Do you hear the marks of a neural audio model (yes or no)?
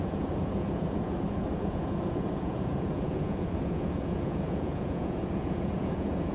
yes